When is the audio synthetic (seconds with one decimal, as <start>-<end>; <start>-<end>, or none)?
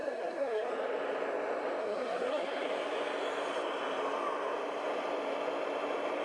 0.0-0.7; 1.8-2.7